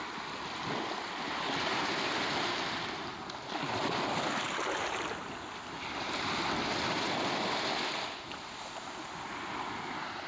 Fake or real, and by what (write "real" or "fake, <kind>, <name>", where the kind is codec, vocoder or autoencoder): real